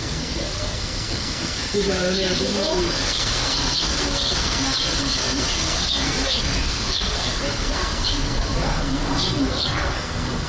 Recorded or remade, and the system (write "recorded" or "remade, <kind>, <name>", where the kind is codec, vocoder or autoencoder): remade, codec, SNAC